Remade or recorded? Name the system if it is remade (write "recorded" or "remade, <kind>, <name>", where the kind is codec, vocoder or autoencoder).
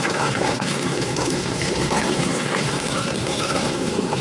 remade, codec, SNAC